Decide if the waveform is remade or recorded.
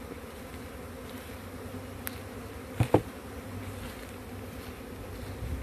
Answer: recorded